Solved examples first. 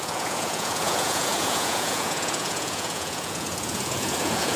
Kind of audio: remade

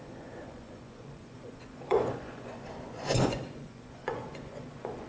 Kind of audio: remade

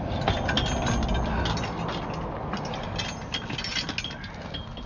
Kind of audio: recorded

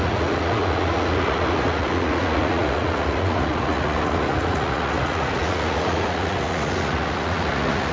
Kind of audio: remade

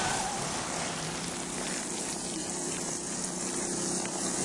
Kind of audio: recorded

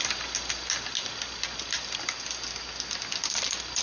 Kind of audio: recorded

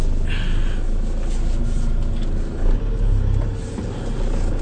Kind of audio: recorded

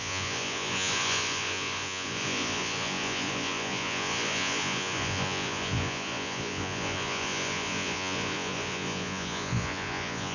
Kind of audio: remade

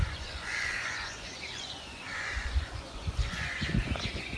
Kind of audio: remade